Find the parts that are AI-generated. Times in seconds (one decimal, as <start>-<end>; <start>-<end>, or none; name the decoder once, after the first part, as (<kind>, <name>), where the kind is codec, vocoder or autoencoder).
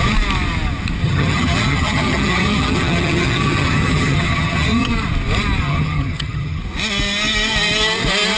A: 1.0-4.9 (vocoder, HiFi-GAN); 5.6-6.6